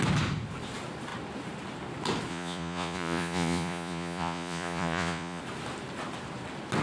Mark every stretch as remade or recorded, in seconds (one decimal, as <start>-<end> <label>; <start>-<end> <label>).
0.0-2.3 recorded; 2.3-5.4 remade; 5.4-6.8 recorded